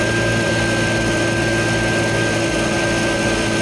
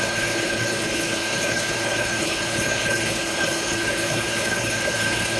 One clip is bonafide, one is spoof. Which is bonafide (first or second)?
first